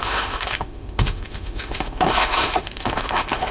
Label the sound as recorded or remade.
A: remade